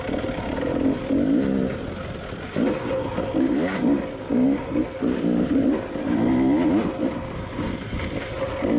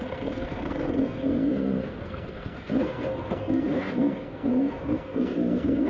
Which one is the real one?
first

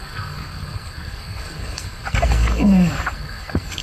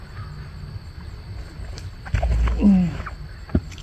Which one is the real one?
second